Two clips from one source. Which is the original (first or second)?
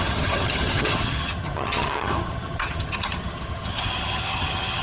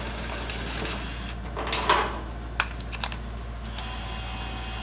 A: second